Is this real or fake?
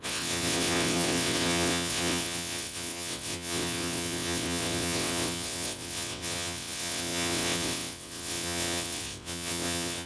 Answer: fake